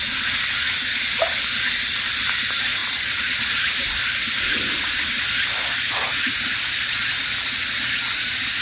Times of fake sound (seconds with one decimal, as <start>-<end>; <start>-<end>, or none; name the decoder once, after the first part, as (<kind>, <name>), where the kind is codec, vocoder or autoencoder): none